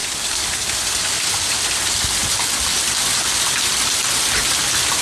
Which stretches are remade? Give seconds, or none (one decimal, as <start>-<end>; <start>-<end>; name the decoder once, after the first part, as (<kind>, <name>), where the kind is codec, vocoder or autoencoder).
0.0-0.7 (codec, DAC)